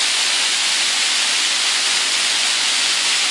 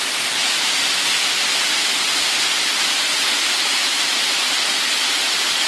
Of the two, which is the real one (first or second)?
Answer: second